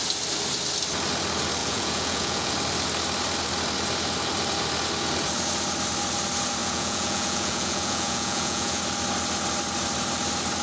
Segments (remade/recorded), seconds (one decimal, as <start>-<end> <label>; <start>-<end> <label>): 0.0-1.6 recorded; 1.6-2.5 remade; 2.5-6.6 recorded; 6.6-8.8 remade; 8.8-10.6 recorded